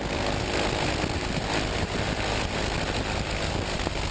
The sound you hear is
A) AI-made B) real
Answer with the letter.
B